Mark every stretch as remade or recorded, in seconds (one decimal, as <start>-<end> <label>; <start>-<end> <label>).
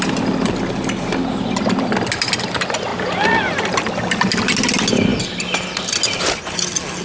0.0-7.0 recorded